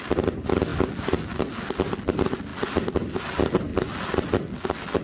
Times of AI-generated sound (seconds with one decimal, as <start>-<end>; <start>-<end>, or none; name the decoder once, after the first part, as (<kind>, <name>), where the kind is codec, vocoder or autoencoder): none